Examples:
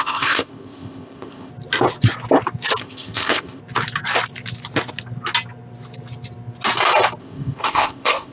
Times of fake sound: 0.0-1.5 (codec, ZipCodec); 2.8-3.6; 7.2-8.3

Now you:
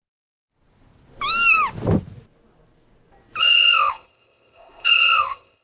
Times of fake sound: 3.4-5.6 (codec, ZipCodec)

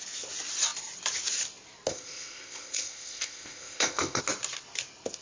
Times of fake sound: 1.9-4.2 (codec, ZipCodec)

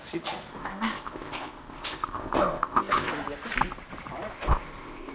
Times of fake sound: 0.5-3.1 (codec, ZipCodec); 4.3-5.1

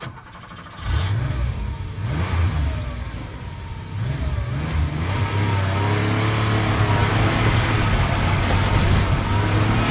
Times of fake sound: none

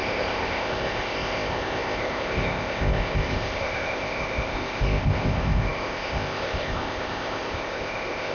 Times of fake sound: 0.0-8.3 (codec, ZipCodec)

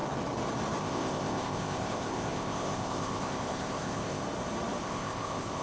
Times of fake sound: 0.8-4.2 (codec, ZipCodec); 4.8-5.6